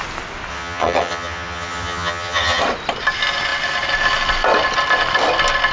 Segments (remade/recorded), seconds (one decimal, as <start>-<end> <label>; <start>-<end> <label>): 0.0-0.5 recorded; 0.5-2.6 remade; 2.6-5.7 recorded